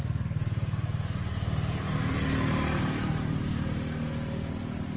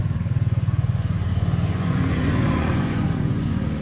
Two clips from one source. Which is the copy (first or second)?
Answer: second